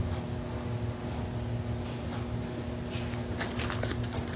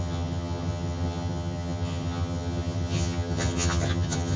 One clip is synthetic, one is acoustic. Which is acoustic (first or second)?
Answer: first